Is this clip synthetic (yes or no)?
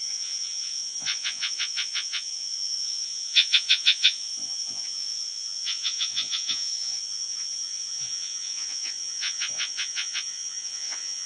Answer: yes